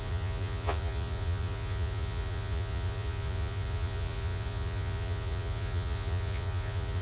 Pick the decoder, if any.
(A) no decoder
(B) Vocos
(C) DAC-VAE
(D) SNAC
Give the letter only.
B